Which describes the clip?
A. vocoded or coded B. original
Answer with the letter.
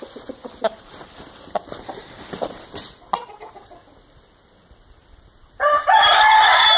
B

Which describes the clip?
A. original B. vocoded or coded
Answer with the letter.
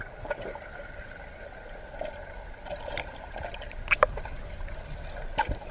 A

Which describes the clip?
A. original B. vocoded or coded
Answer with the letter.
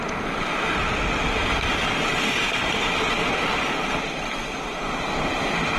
A